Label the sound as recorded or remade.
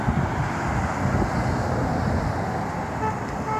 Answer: recorded